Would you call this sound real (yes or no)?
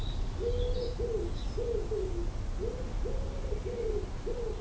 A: yes